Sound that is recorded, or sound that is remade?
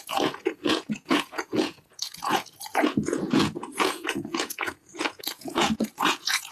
remade